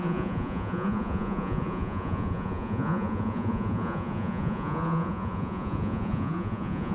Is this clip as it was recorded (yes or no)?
no